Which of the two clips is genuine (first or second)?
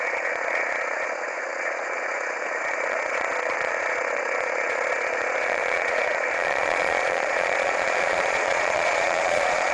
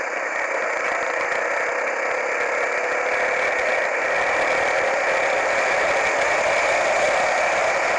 second